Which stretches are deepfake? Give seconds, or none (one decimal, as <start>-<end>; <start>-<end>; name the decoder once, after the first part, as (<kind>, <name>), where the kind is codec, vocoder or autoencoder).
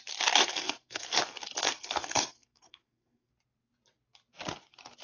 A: 0.5-1.2 (codec, SNAC); 1.6-3.3